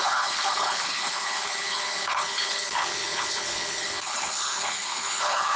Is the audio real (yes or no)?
no